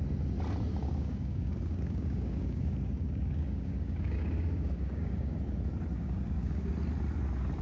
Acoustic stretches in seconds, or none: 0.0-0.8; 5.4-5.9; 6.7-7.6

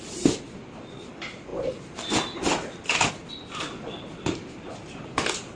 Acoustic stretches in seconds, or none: 0.0-5.6

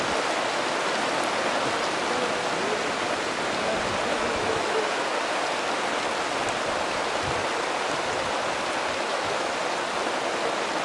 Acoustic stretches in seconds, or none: 0.0-4.1; 5.0-9.1; 9.6-10.8